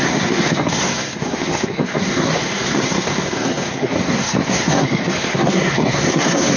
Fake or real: fake